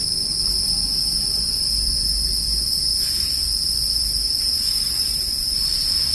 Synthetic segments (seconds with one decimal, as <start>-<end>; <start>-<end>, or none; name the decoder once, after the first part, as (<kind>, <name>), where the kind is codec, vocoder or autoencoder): 1.3-6.1 (vocoder, Vocos)